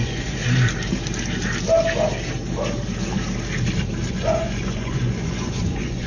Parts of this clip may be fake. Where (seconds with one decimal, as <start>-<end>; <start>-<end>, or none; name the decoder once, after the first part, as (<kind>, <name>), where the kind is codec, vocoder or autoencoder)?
0.0-0.4 (vocoder, Vocos); 4.1-6.1